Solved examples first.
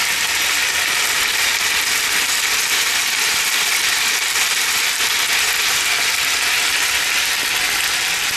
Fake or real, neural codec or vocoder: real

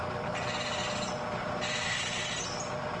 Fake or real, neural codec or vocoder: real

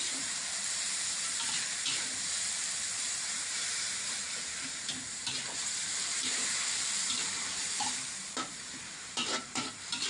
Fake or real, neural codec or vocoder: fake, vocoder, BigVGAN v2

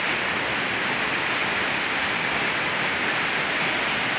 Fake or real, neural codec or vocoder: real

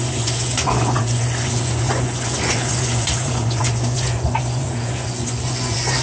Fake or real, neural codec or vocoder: fake, vocoder, Vocos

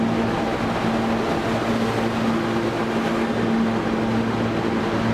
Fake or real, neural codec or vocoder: real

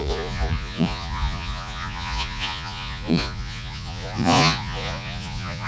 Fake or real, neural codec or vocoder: fake, vocoder, Vocos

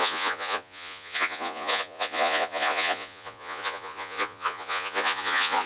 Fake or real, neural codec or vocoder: fake, vocoder, Vocos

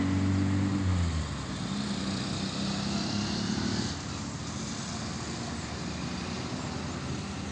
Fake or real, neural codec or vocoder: real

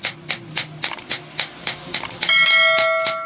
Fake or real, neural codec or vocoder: real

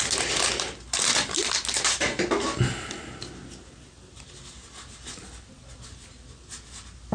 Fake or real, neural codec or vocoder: real